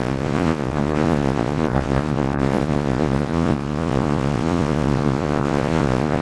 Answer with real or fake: fake